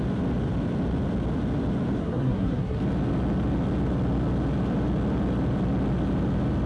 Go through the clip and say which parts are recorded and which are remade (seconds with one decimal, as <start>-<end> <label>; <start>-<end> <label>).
0.0-2.0 recorded; 2.0-2.8 remade; 2.8-6.7 recorded